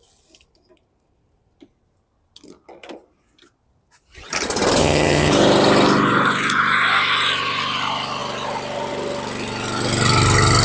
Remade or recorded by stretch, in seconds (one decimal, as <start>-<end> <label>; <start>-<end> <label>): 0.0-4.8 recorded; 4.8-5.3 remade; 5.3-10.6 recorded